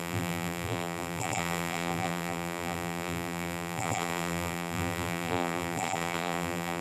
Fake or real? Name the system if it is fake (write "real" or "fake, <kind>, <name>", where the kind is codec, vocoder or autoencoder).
fake, vocoder, BigVGAN v2